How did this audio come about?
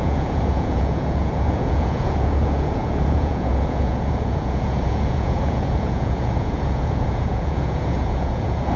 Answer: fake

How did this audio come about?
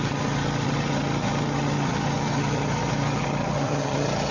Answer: fake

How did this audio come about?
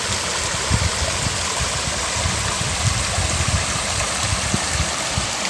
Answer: real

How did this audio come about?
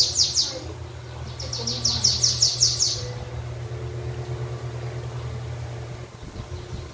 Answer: real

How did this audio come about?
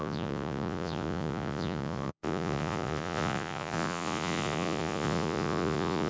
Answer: fake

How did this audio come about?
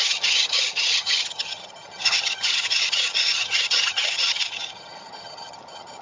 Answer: fake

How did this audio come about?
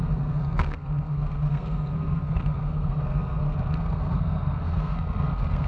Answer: fake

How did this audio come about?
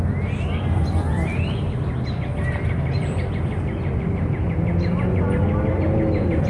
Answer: real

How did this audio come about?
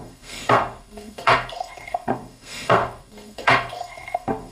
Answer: fake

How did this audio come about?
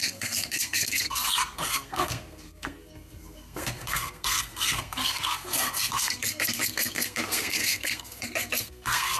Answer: fake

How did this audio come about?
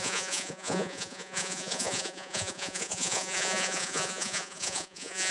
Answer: fake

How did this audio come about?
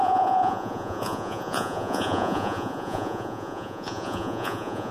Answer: fake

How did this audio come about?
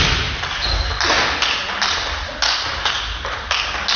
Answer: real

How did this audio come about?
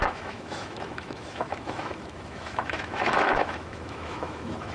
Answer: fake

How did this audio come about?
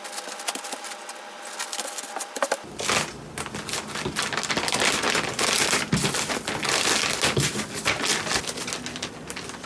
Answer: real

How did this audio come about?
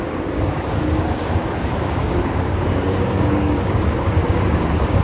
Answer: fake